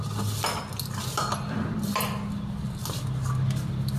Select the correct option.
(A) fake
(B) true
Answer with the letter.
B